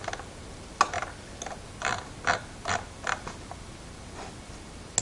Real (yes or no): yes